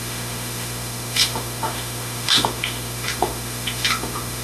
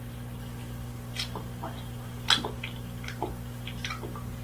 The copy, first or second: first